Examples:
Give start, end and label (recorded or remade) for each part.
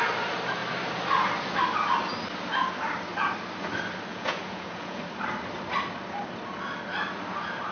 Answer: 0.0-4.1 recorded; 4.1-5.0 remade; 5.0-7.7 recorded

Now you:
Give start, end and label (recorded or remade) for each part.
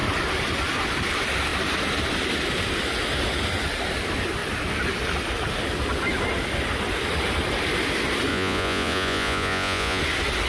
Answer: 0.0-8.3 recorded; 8.3-10.0 remade; 10.0-10.5 recorded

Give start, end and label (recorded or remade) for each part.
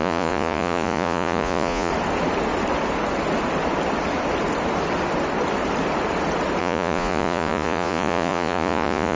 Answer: 0.0-1.9 remade; 1.9-6.6 recorded; 6.6-9.2 remade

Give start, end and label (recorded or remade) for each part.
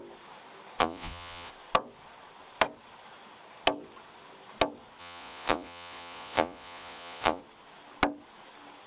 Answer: 0.0-0.8 recorded; 0.8-1.5 remade; 1.5-5.0 recorded; 5.0-7.4 remade; 7.4-8.9 recorded